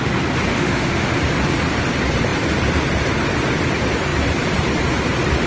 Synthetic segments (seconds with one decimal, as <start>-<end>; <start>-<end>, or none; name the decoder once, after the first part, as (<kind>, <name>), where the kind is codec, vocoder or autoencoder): 0.5-1.2 (autoencoder, DAC-VAE)